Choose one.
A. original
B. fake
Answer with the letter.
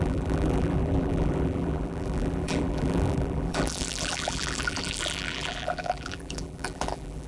B